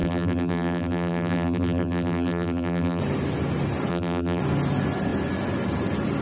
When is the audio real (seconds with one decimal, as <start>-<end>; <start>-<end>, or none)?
3.0-3.9; 4.4-6.2